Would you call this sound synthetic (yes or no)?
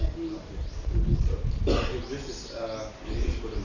no